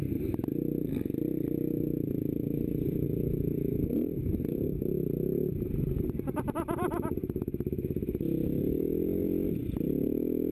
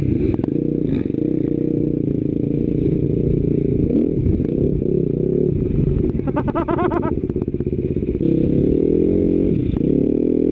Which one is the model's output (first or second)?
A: first